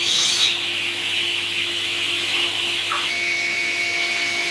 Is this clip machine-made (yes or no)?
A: yes